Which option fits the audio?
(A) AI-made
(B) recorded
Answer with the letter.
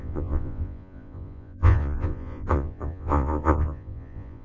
A